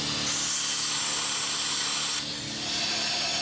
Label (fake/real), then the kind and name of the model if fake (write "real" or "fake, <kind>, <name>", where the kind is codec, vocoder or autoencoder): real